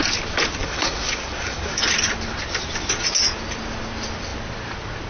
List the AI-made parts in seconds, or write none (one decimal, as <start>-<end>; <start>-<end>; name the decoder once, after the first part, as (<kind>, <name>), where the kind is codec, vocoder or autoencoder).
0.6-1.8 (codec, DAC)